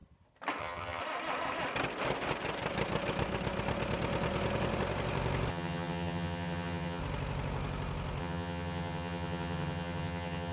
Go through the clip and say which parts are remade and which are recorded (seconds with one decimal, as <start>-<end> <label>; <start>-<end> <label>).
0.0-0.6 recorded; 0.6-1.0 remade; 1.0-5.5 recorded; 5.5-7.0 remade; 7.0-8.2 recorded; 8.2-10.5 remade